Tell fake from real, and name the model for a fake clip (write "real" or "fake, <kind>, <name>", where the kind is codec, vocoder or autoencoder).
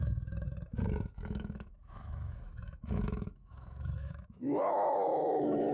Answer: fake, autoencoder, DAC-VAE